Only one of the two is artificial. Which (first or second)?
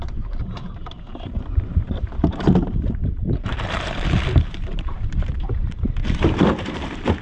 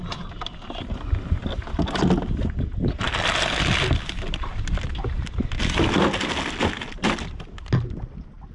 first